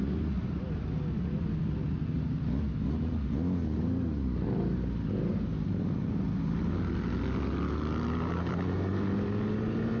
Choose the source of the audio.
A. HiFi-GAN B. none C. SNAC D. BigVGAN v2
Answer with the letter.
B